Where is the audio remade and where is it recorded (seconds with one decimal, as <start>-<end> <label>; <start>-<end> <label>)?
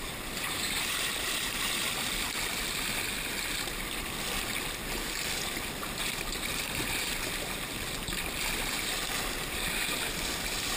0.0-1.8 remade; 1.8-10.8 recorded